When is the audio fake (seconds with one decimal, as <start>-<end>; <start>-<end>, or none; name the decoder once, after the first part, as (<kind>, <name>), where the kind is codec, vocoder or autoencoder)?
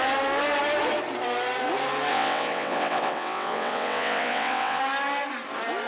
2.1-4.8 (vocoder, WaveNeXt)